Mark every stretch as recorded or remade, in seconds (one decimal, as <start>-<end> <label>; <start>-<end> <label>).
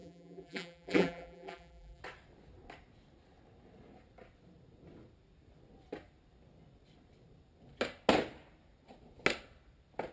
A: 0.0-2.0 remade; 2.0-10.1 recorded